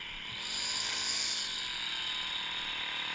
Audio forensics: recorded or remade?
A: recorded